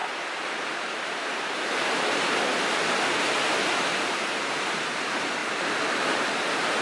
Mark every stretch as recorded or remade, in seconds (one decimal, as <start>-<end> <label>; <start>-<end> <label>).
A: 0.0-2.5 remade; 2.5-3.1 recorded; 3.1-5.4 remade; 5.4-6.0 recorded; 6.0-6.8 remade